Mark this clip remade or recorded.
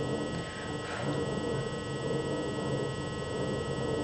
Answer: recorded